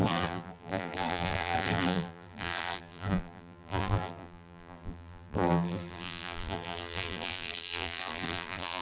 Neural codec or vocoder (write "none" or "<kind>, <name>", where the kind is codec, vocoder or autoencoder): vocoder, BigVGAN v2